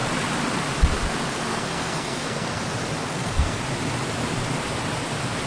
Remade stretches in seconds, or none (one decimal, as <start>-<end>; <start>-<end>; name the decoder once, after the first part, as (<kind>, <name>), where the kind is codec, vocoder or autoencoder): 1.5-2.6 (codec, SNAC); 3.1-3.6